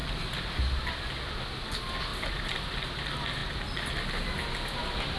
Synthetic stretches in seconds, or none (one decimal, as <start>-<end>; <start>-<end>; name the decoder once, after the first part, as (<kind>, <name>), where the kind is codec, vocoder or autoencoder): 2.1-3.0 (vocoder, BigVGAN v2)